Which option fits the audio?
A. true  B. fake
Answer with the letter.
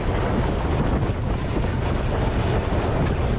A